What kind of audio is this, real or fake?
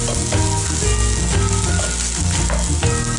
real